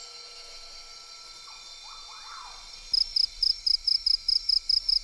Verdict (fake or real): real